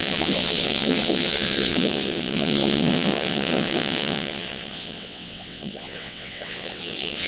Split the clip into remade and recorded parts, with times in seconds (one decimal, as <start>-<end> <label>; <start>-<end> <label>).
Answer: 0.0-7.3 remade